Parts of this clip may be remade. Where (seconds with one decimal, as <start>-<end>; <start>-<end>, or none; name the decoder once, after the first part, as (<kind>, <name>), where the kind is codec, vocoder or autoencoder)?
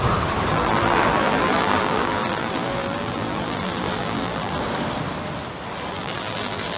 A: 0.5-4.6 (vocoder, BigVGAN v2); 5.9-6.8